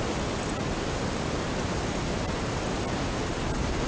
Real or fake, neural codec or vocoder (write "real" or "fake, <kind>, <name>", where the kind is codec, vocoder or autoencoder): real